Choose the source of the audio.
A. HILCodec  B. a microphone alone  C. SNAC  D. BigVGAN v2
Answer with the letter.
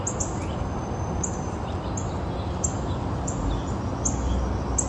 B